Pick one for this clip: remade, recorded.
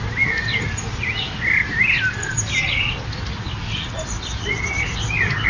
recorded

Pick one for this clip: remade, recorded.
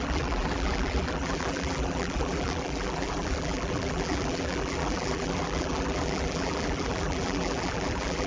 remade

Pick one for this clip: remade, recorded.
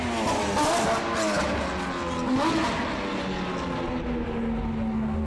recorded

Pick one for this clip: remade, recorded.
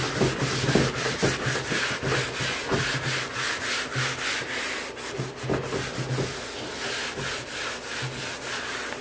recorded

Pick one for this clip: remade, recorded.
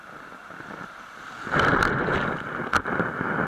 remade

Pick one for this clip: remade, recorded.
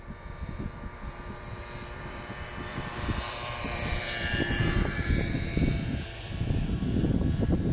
remade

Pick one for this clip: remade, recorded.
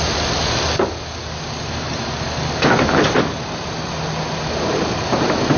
recorded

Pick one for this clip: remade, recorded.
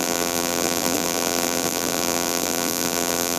remade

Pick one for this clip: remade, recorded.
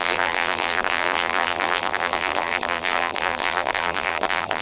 remade